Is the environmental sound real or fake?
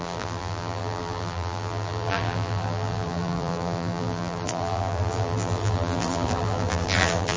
fake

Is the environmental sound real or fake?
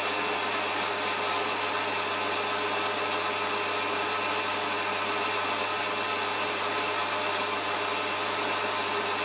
real